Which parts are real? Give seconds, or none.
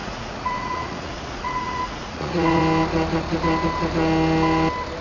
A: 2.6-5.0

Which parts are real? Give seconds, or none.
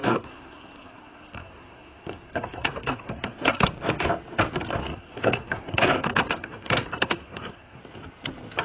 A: 3.7-4.8; 7.8-8.6